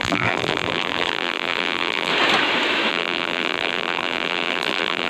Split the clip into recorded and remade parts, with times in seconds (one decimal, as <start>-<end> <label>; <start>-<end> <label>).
0.0-2.1 remade; 2.1-2.9 recorded; 2.9-5.1 remade